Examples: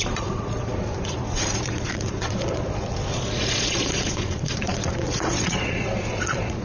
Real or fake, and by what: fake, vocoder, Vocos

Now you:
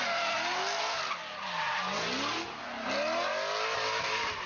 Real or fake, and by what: real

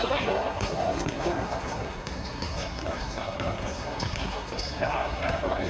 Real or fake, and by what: fake, codec, SNAC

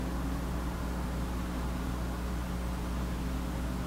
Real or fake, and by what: real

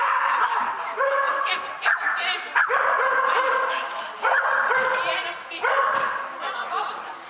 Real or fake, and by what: real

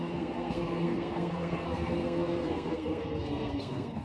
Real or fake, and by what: fake, codec, SNAC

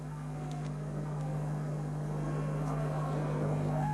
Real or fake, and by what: fake, codec, SNAC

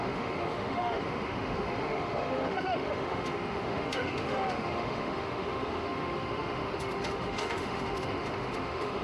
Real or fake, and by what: fake, autoencoder, DAC-VAE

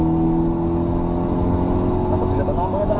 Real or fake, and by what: real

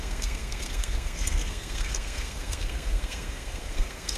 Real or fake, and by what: fake, codec, SNAC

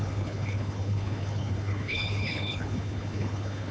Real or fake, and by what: fake, codec, HILCodec